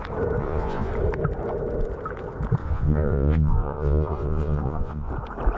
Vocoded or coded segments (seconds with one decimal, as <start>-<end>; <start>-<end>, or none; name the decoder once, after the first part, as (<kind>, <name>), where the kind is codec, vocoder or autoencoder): 0.4-0.9 (vocoder, Vocos); 2.6-5.1